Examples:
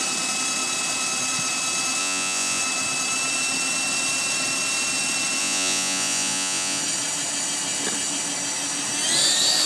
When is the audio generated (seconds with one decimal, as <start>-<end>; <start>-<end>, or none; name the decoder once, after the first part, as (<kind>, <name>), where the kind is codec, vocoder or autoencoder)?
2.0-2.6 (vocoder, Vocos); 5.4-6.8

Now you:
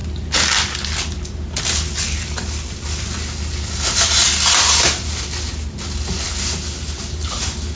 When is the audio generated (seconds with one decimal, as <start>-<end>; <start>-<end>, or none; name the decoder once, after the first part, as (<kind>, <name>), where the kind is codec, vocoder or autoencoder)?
none

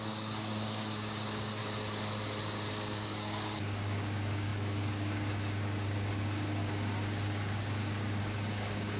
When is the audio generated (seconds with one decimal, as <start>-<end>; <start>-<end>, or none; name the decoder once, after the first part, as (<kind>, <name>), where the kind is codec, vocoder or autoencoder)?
0.0-1.6 (codec, DAC); 2.7-9.0